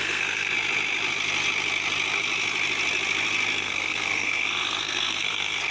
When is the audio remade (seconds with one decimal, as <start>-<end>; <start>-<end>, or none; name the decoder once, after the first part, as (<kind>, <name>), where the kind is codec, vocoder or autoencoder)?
0.0-0.5 (codec, SNAC); 3.6-5.7